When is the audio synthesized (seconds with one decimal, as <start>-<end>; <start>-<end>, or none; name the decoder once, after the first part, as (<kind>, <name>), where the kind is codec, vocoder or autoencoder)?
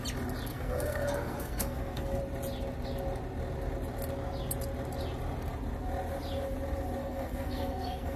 0.5-2.2 (codec, SNAC); 7.0-8.2